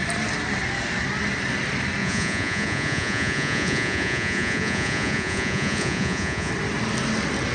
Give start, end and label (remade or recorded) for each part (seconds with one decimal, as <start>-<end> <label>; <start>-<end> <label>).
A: 0.0-2.0 recorded; 2.0-6.5 remade; 6.5-7.5 recorded